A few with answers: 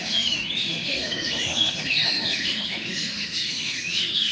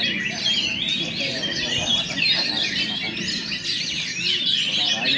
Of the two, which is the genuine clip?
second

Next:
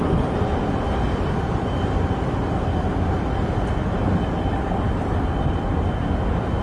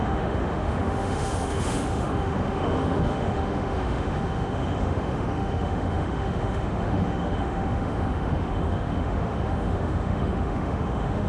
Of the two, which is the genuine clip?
first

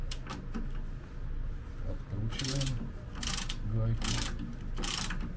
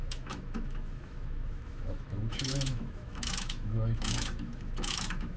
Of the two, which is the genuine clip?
first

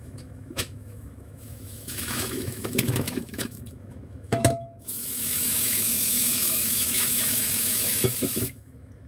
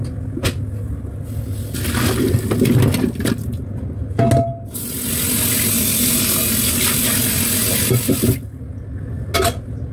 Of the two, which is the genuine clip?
second